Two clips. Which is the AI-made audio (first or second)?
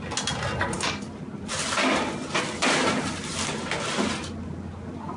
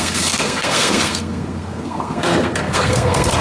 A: second